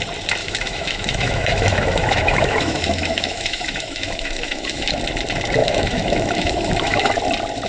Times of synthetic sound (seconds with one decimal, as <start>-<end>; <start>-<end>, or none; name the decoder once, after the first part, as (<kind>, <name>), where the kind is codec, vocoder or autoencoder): 0.4-5.0 (autoencoder, DAC-VAE); 5.6-7.1